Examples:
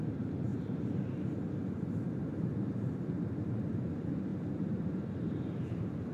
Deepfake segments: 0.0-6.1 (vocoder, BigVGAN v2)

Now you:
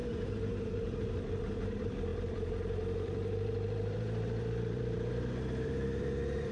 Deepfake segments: 0.0-6.5 (vocoder, BigVGAN v2)

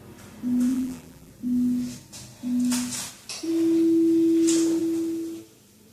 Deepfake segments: 0.7-1.3 (vocoder, BigVGAN v2)

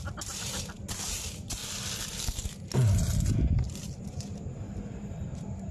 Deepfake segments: 0.0-1.6 (vocoder, BigVGAN v2); 3.6-5.7

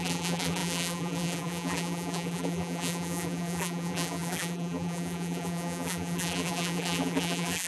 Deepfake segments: 0.0-7.7 (vocoder, BigVGAN v2)

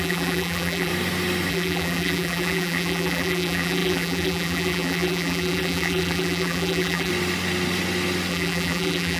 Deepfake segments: 0.0-0.9 (vocoder, BigVGAN v2); 1.5-7.1; 8.3-9.2

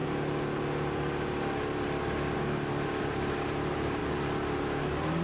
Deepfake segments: 2.7-4.0 (vocoder, BigVGAN v2); 4.8-5.2

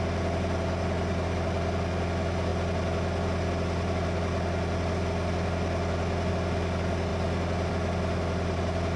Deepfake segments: none